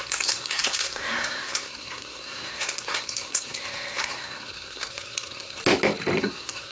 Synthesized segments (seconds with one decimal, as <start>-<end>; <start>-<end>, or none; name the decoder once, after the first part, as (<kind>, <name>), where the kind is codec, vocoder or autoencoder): 0.0-5.6 (codec, SNAC); 6.2-6.7